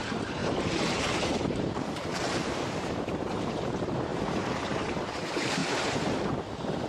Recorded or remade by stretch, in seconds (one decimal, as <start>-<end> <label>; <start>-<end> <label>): 0.0-5.6 remade; 5.6-6.9 recorded